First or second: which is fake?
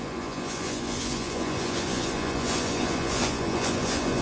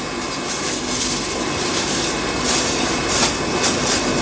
first